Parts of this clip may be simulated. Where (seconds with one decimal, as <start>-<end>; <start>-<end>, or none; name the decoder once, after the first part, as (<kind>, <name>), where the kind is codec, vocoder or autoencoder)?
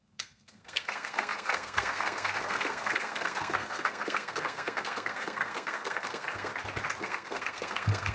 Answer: 0.0-6.5 (codec, SNAC); 7.0-8.1